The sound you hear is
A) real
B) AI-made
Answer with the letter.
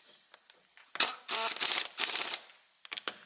A